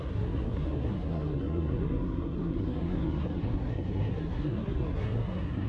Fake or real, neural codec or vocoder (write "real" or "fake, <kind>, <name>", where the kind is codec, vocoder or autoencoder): fake, codec, SNAC